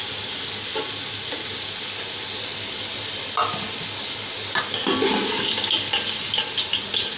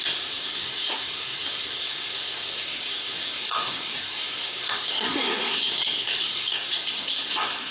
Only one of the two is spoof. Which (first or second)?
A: second